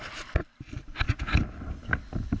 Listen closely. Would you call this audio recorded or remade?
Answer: recorded